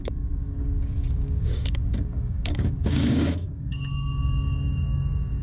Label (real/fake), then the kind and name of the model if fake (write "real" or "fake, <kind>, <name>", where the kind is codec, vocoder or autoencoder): fake, codec, DAC